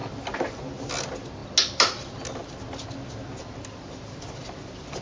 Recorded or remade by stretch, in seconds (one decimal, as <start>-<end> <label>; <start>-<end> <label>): 0.0-5.0 recorded